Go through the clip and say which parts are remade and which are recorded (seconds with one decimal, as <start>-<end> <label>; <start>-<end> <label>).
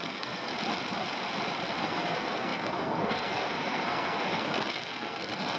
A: 0.0-0.5 remade; 0.5-1.8 recorded; 1.8-5.6 remade